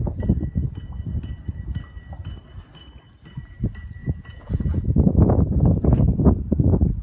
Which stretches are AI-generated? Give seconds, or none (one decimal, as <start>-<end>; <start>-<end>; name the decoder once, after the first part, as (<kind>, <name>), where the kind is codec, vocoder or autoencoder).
4.0-7.0 (vocoder, Vocos)